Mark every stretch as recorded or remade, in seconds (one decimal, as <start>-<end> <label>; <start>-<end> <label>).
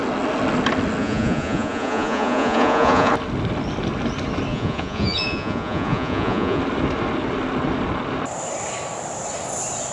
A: 0.0-1.0 recorded; 1.0-3.1 remade; 3.1-4.5 recorded; 4.5-6.6 remade; 6.6-9.9 recorded